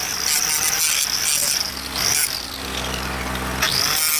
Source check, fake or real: real